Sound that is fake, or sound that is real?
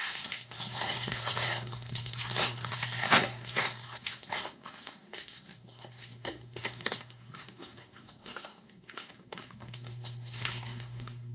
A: fake